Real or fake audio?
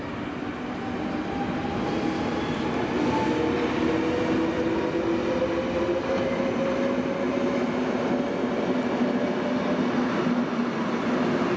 real